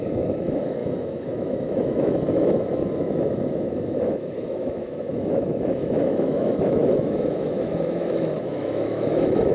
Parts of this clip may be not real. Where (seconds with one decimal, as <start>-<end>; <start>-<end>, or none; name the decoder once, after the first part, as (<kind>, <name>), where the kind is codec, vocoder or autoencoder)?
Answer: 0.0-9.5 (autoencoder, DAC-VAE)